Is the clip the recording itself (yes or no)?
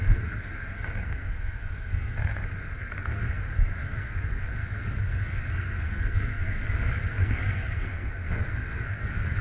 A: no